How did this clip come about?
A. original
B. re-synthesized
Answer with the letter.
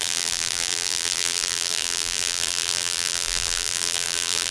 B